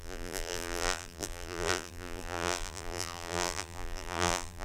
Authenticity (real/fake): fake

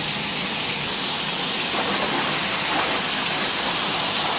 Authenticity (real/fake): real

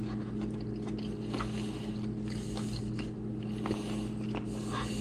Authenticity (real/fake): real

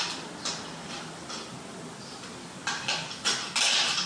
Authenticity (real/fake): real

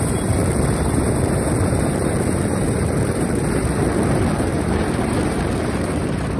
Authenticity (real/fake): fake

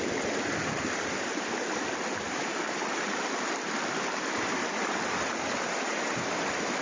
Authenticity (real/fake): fake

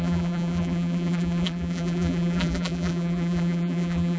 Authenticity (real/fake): fake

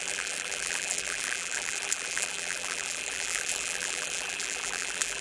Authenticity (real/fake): fake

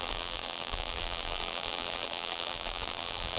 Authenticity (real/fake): fake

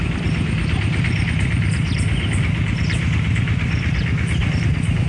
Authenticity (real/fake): fake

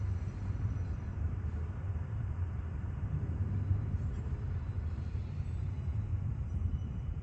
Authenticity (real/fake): fake